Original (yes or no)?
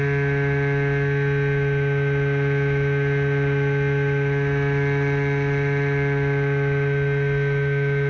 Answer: yes